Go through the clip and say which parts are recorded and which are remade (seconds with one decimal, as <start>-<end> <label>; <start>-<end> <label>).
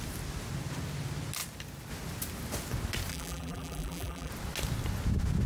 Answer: 0.0-3.1 recorded; 3.1-4.3 remade; 4.3-5.5 recorded